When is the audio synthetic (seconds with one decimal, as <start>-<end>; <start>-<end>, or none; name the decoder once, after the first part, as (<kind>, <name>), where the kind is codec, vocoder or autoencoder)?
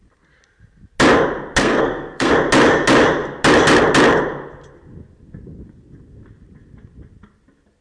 1.6-2.3 (codec, SNAC)